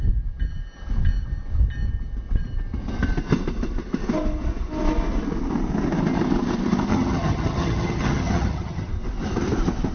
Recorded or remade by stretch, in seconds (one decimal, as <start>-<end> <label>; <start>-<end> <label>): 0.0-6.9 recorded; 6.9-8.9 remade; 8.9-9.9 recorded